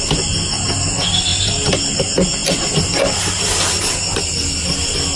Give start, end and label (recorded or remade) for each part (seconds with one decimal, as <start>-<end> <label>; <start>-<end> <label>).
0.0-5.2 recorded